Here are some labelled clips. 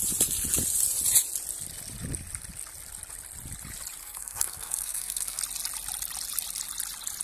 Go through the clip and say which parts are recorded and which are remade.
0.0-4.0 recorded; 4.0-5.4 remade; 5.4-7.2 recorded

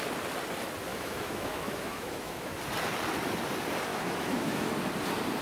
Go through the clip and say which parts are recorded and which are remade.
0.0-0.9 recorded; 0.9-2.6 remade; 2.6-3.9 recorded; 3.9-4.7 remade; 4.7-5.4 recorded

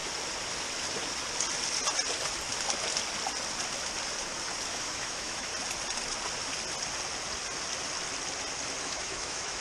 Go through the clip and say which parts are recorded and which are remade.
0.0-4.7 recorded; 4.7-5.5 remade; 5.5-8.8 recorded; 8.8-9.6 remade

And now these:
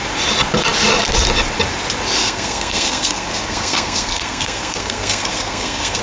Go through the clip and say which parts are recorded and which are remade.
0.0-2.2 recorded; 2.2-6.0 remade